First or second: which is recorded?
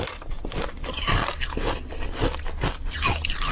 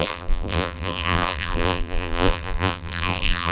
first